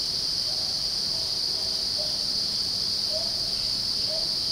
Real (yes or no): yes